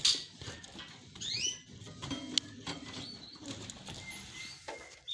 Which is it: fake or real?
real